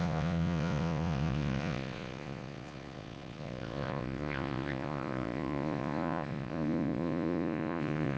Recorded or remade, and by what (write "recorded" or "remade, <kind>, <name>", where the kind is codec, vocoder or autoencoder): remade, vocoder, Vocos